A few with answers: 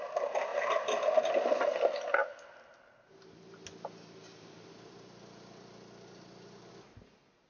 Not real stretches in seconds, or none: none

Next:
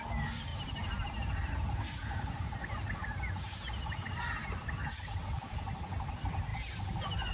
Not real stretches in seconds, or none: 0.5-4.9

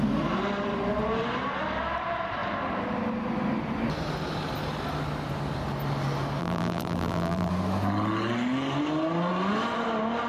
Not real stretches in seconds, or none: 6.4-7.5

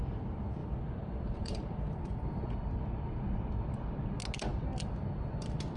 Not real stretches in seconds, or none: 0.6-4.1; 4.5-5.8